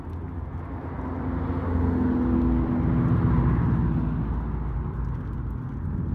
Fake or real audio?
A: real